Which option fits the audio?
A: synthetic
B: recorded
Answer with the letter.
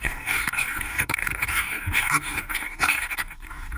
A